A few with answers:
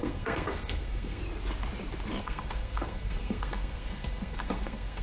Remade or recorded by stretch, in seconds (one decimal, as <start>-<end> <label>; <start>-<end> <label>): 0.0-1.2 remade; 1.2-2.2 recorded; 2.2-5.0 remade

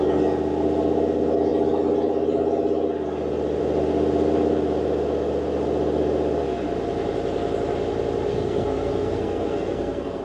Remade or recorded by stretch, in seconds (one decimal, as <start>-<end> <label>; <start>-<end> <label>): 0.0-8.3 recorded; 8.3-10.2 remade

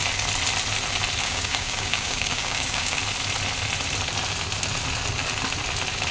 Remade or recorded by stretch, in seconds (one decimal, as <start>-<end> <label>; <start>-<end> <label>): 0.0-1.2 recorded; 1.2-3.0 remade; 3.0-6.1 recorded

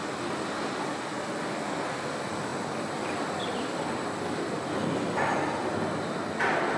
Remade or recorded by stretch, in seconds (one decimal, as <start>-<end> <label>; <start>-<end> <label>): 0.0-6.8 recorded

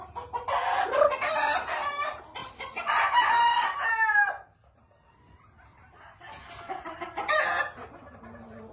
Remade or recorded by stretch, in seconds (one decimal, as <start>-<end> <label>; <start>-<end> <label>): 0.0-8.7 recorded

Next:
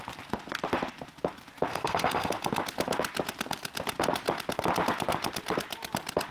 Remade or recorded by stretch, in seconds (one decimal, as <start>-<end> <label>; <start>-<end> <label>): 0.0-1.7 recorded; 1.7-2.3 remade; 2.3-6.3 recorded

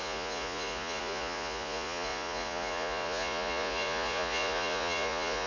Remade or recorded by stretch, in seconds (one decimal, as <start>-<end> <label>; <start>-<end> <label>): 0.0-5.5 remade

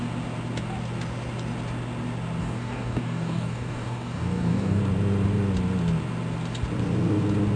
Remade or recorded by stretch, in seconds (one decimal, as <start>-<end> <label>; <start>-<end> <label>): 0.0-2.4 recorded; 2.4-4.8 remade; 4.8-7.6 recorded